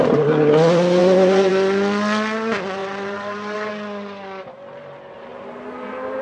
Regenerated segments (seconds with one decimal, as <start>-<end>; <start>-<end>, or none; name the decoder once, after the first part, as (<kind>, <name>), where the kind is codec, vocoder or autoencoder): 2.8-3.7 (vocoder, BigVGAN v2); 5.3-6.2